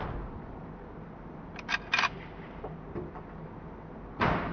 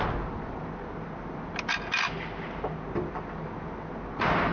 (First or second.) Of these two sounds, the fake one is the first